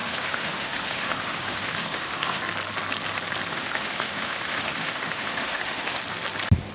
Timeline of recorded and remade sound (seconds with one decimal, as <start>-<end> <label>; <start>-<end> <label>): 0.0-2.4 remade; 2.4-3.5 recorded; 3.5-6.0 remade; 6.0-6.7 recorded